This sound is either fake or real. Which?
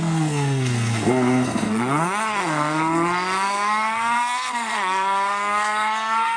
fake